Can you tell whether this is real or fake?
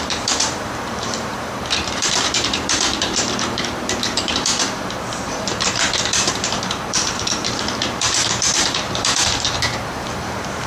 fake